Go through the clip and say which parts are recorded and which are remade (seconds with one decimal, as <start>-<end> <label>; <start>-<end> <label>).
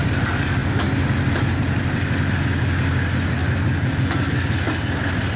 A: 0.0-5.4 recorded